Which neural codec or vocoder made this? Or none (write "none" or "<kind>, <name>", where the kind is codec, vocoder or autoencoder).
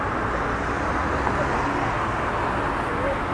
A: none